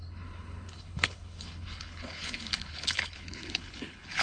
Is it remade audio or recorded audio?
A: remade